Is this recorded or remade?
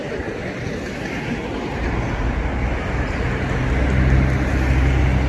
recorded